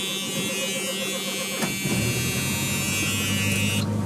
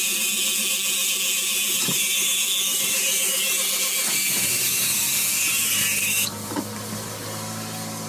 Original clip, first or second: first